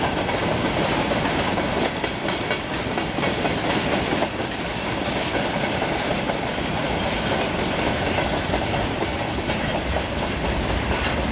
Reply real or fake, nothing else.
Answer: fake